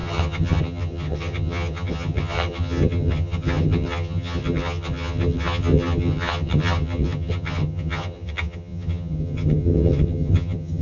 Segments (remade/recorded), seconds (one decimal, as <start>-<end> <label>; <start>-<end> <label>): 0.0-10.8 remade